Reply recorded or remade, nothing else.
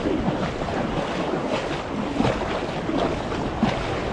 recorded